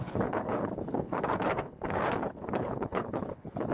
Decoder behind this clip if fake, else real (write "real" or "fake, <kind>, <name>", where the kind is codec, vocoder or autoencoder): fake, codec, HILCodec